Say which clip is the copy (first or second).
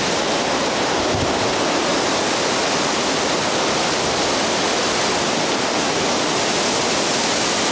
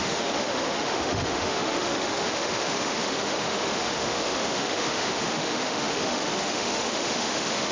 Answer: second